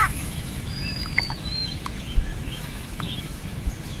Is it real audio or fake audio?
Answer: fake